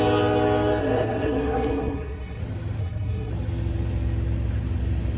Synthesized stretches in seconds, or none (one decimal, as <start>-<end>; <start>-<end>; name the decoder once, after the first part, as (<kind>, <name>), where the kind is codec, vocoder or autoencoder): 0.8-2.4 (codec, SNAC); 2.8-3.3